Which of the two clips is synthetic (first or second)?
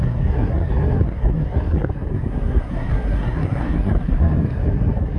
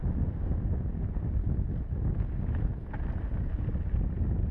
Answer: first